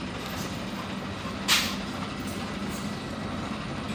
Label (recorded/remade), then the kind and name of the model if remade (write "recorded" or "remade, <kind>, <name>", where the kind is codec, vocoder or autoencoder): recorded